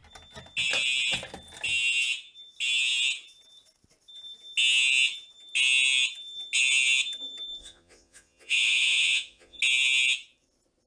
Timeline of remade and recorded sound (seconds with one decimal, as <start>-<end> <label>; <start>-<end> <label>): 0.0-7.6 recorded; 7.6-9.6 remade; 9.6-10.9 recorded

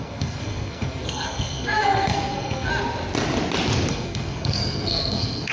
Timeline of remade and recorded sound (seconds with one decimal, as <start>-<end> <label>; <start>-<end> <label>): 0.0-2.7 remade; 2.7-3.9 recorded; 3.9-5.5 remade

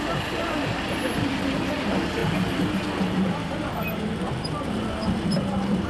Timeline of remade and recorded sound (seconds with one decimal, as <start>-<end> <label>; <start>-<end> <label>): 0.0-5.9 recorded

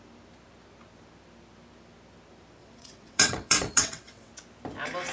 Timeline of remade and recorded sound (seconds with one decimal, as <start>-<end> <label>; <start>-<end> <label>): 0.0-2.6 recorded; 2.6-4.3 remade; 4.3-5.1 recorded

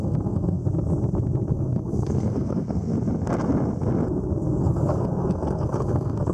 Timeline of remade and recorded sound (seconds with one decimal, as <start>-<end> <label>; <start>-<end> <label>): 0.0-0.6 remade; 0.6-1.5 recorded; 1.5-2.9 remade; 2.9-4.6 recorded; 4.6-6.3 remade

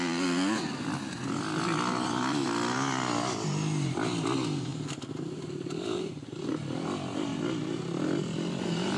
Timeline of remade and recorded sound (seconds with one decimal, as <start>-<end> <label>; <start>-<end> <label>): 0.0-4.7 recorded; 4.7-6.3 remade; 6.3-9.0 recorded